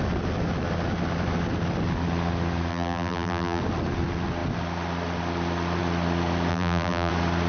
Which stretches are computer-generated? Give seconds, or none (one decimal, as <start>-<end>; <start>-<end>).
2.7-3.6; 6.5-7.1